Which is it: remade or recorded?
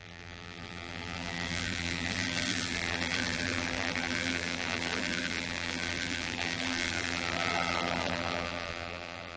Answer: remade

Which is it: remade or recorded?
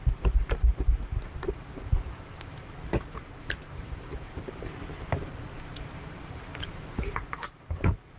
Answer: remade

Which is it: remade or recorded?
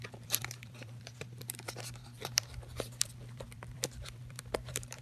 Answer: remade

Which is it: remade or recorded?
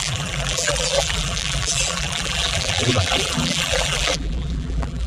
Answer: remade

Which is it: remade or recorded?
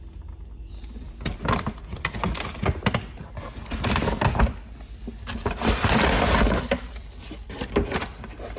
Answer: recorded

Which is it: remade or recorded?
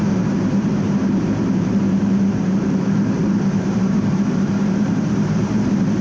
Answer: remade